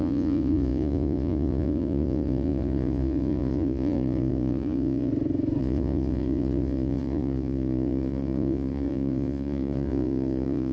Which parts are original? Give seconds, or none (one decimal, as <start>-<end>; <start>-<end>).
5.1-5.6